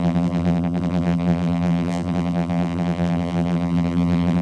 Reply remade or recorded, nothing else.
remade